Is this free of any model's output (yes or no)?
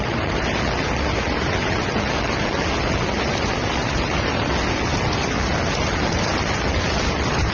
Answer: yes